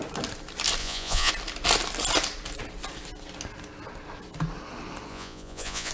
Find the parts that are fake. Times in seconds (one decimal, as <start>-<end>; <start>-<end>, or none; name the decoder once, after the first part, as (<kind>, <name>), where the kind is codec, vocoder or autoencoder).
0.8-1.3 (vocoder, Vocos); 5.1-5.9